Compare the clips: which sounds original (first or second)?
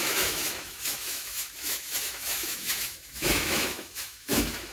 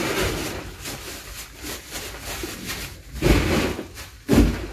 second